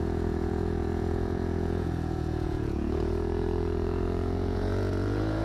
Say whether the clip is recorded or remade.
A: remade